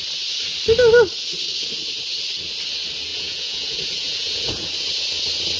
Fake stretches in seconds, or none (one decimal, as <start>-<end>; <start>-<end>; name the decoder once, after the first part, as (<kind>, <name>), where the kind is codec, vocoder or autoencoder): 3.1-4.7 (vocoder, Vocos)